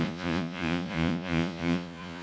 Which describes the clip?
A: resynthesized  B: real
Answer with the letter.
A